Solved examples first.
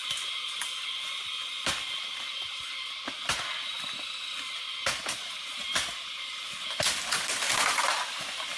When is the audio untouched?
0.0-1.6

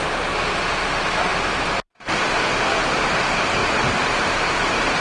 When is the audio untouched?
0.0-1.3; 2.3-3.6; 4.6-5.0

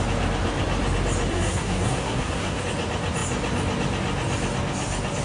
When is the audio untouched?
0.0-1.3; 2.6-5.2

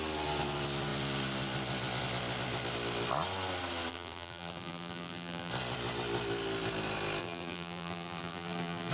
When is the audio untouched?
0.0-3.9; 5.5-7.2

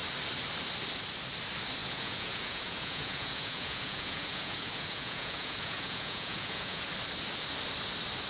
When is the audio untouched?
0.0-1.8; 6.8-8.3

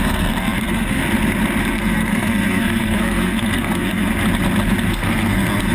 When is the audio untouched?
1.0-1.6; 4.1-4.9

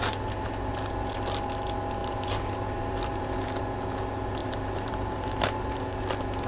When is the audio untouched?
0.0-2.0; 3.6-4.4; 6.0-6.5

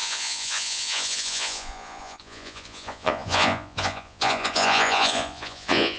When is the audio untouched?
none